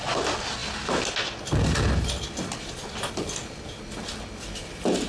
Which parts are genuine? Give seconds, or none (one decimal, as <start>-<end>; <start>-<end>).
0.0-5.1